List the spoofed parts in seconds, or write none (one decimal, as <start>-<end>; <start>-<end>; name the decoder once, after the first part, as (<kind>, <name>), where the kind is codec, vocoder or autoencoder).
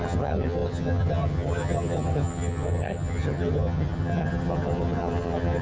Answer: 0.0-5.6 (vocoder, HiFi-GAN)